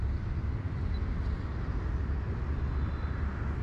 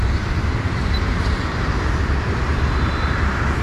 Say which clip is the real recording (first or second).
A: first